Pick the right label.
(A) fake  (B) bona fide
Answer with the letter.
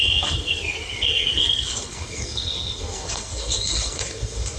A